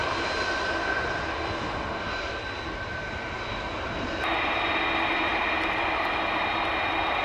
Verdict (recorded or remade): recorded